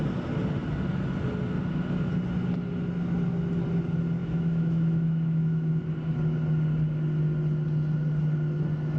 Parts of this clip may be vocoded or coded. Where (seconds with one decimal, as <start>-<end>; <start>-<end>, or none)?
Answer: 4.2-5.8